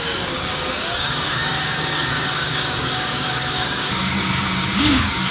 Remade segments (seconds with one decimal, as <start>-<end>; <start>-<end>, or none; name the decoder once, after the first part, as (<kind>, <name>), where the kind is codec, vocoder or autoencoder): 0.0-5.3 (codec, DAC)